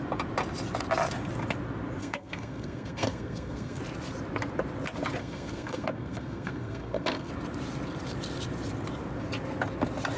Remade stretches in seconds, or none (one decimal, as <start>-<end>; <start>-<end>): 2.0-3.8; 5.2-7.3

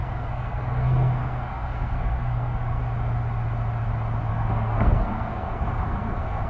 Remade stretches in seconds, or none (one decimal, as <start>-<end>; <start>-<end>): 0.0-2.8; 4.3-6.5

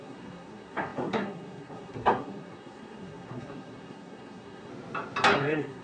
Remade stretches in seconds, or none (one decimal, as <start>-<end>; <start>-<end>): 0.0-4.7; 5.3-5.8

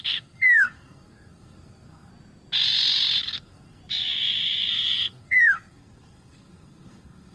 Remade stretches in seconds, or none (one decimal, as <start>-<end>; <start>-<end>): 0.0-2.1; 3.2-3.8; 4.7-7.3

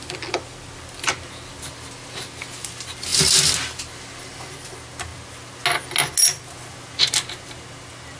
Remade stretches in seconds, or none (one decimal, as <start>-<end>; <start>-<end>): none

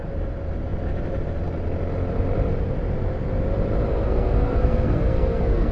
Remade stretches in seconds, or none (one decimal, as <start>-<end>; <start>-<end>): 3.9-5.7